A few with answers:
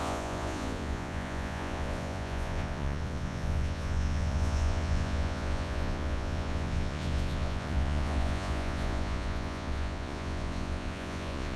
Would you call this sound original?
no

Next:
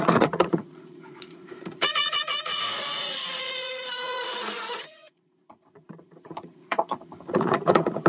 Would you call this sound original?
no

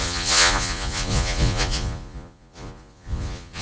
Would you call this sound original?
no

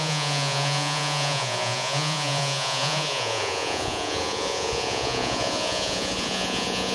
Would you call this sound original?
no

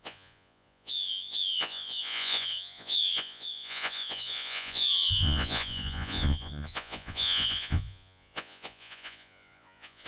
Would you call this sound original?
no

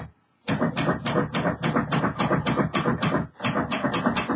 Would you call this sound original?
yes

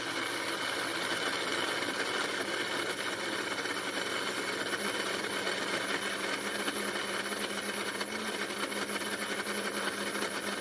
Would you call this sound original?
yes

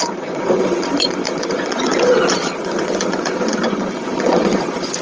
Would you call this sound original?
no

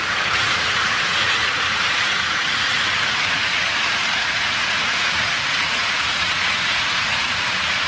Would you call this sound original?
no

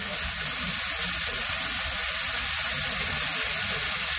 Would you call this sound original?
yes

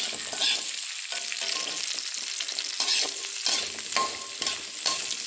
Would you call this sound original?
yes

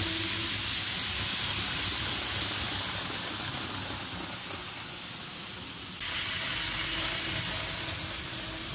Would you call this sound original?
yes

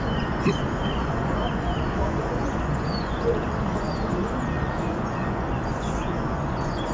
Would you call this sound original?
no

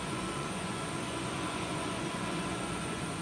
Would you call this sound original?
no